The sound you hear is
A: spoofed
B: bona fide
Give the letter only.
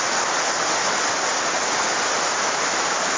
B